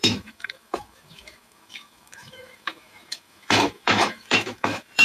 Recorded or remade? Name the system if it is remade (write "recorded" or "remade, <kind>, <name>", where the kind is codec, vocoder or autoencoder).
remade, autoencoder, DAC-VAE